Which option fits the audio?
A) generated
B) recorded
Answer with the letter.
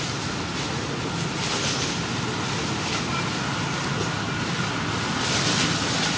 B